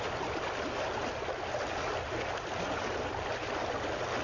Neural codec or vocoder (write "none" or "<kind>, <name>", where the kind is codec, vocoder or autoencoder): none